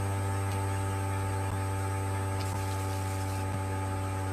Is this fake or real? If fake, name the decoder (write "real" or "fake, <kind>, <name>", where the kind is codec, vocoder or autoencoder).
real